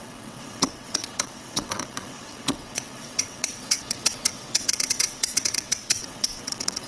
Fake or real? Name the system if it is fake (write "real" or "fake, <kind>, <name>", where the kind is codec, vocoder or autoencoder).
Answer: fake, vocoder, WaveNeXt